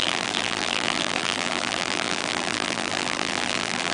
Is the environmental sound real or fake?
fake